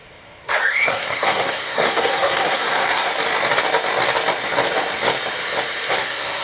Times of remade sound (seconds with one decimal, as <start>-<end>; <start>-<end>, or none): 0.0-3.1; 5.9-6.4